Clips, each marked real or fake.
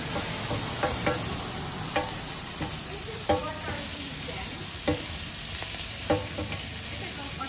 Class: fake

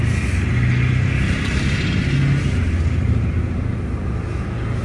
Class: real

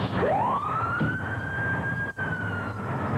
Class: real